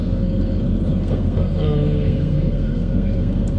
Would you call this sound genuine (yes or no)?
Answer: no